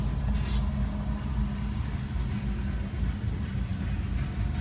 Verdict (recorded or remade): recorded